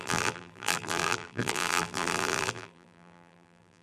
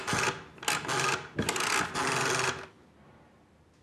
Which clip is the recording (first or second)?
second